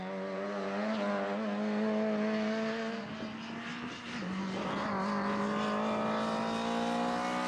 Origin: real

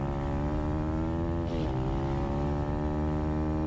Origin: real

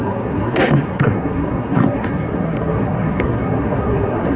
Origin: fake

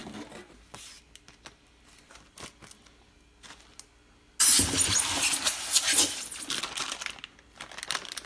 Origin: real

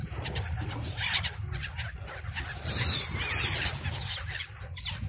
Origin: real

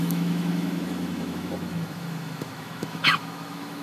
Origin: fake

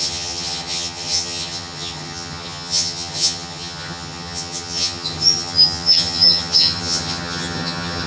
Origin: fake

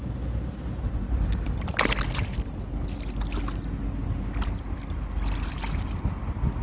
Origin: real